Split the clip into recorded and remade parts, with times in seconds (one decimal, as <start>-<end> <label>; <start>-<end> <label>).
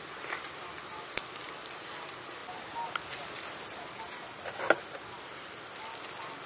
0.0-6.5 recorded